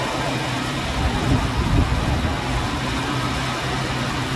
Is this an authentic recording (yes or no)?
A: yes